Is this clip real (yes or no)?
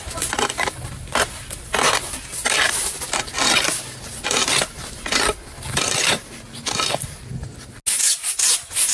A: yes